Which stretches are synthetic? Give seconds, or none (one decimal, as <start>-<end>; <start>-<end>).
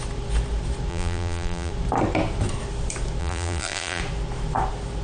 0.9-1.7; 3.2-4.0